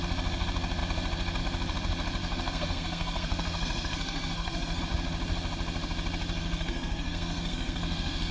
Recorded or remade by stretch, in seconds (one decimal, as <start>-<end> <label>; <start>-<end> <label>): 0.0-2.2 recorded; 2.2-4.8 remade; 4.8-6.4 recorded; 6.4-8.3 remade